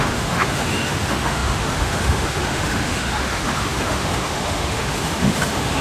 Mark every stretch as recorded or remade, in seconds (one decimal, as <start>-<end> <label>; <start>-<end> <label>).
0.0-5.8 remade